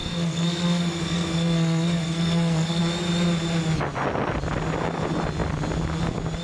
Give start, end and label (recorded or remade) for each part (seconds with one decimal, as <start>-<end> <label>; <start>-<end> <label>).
0.0-2.8 remade; 2.8-6.4 recorded

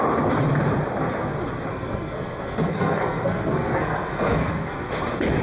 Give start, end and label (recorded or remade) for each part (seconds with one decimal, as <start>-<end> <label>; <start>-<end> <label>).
0.0-1.7 recorded; 1.7-4.9 remade; 4.9-5.4 recorded

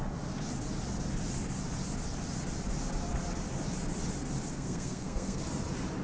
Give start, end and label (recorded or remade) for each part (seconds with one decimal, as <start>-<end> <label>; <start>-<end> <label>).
0.0-4.5 recorded; 4.5-5.4 remade; 5.4-6.0 recorded

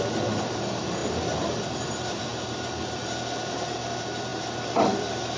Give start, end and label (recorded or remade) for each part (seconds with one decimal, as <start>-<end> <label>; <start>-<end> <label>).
0.0-4.3 recorded; 4.3-5.4 remade

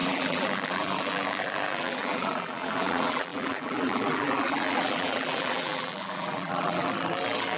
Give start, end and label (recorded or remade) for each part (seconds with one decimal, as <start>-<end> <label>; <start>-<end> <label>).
0.0-7.6 remade

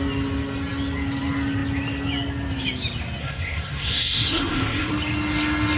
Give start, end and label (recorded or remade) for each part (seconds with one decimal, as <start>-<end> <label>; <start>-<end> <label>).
0.0-3.2 recorded; 3.2-4.9 remade; 4.9-5.8 recorded

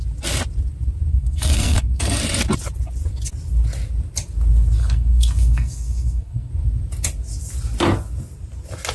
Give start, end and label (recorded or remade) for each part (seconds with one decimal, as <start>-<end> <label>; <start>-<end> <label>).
0.0-1.1 recorded; 1.1-2.2 remade; 2.2-4.8 recorded; 4.8-6.5 remade; 6.5-8.9 recorded